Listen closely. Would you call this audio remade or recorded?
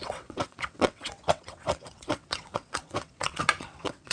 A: remade